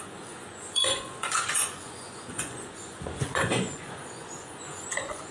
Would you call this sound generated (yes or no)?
yes